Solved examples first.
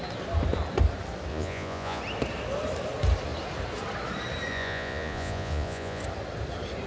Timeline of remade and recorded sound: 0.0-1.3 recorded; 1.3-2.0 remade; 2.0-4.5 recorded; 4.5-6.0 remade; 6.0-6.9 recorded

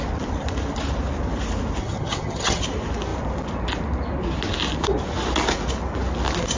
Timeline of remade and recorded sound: 0.0-1.8 recorded; 1.8-2.6 remade; 2.6-6.6 recorded

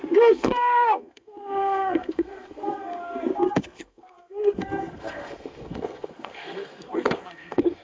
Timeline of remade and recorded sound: 0.0-7.8 remade

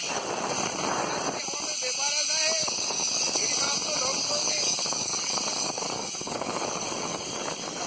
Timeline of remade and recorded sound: 0.0-2.6 recorded; 2.6-3.5 remade; 3.5-4.2 recorded; 4.2-7.9 remade

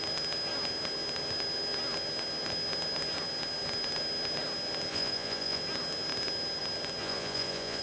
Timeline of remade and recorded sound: 0.0-4.9 recorded; 4.9-5.6 remade; 5.6-7.0 recorded; 7.0-7.8 remade

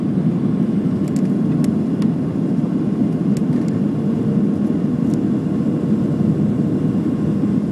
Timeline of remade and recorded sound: 0.0-7.7 recorded